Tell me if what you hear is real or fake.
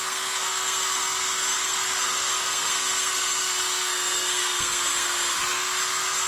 fake